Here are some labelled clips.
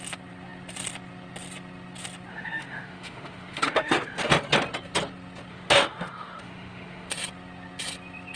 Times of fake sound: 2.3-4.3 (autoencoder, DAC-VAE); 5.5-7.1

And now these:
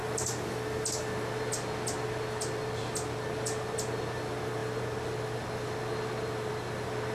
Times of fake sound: none